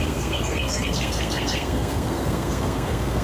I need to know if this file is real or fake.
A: fake